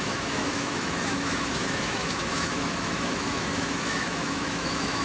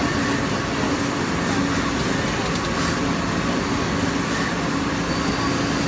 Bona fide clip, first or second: second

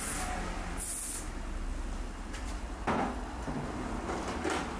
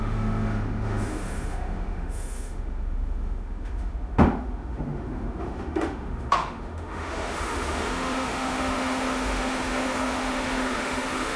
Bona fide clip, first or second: first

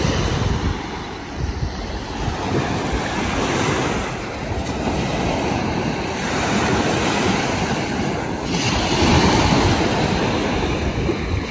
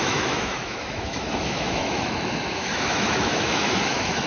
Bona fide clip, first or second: first